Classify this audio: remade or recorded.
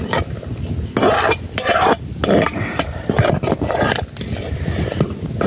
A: recorded